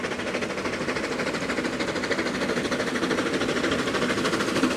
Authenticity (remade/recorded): recorded